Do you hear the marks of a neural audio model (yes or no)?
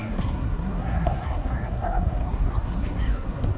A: yes